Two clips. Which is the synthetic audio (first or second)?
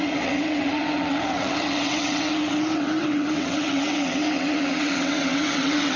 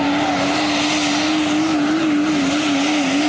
first